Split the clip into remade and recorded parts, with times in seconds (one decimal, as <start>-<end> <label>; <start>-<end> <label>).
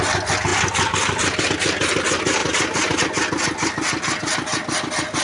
0.0-2.4 recorded; 2.4-3.0 remade; 3.0-5.2 recorded